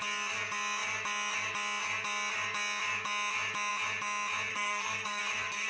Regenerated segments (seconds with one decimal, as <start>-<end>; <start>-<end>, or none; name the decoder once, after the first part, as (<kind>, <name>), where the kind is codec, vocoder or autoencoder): 4.5-5.2 (codec, SNAC)